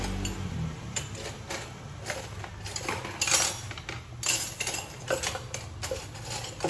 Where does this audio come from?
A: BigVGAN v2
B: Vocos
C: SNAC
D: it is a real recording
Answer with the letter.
D